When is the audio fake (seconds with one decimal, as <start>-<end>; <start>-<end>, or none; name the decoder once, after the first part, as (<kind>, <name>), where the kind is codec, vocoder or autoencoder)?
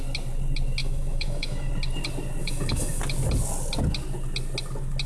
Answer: 0.8-1.7 (autoencoder, DAC-VAE); 2.4-3.0